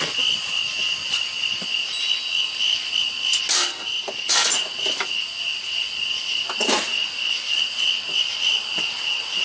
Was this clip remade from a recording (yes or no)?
no